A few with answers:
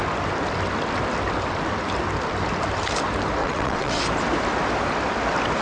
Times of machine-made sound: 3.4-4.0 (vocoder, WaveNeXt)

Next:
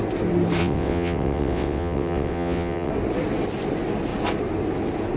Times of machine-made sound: 0.6-2.9 (vocoder, WaveNeXt)

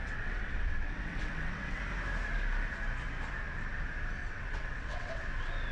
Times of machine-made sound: 0.0-1.8 (vocoder, WaveNeXt); 4.2-5.2

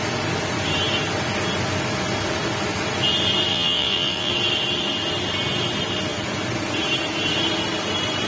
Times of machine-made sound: 3.5-4.3 (vocoder, WaveNeXt)